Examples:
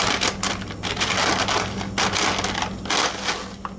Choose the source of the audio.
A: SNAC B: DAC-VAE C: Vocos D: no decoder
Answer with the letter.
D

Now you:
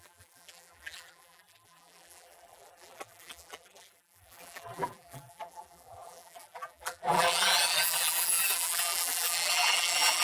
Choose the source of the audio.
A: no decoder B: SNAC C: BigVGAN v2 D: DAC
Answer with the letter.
C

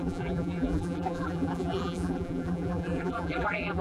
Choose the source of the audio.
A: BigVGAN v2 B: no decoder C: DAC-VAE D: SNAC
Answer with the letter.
A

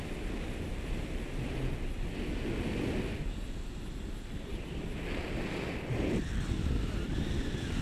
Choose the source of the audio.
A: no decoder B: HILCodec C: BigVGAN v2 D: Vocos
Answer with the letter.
A